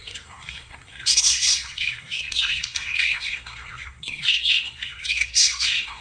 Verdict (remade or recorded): remade